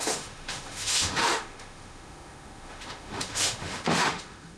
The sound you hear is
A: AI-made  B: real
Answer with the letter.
A